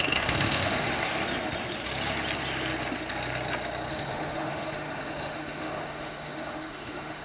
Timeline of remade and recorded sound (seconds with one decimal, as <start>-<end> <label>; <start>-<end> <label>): 0.0-1.1 remade; 1.1-3.9 recorded; 3.9-7.2 remade